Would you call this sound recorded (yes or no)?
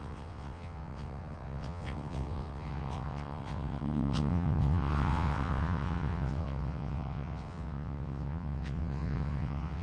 no